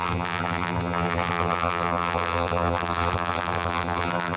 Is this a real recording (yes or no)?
no